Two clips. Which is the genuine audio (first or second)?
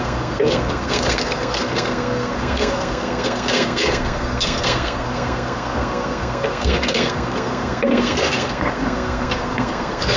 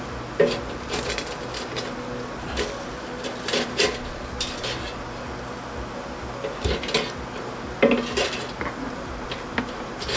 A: second